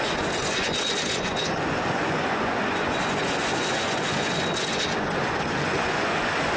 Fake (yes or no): yes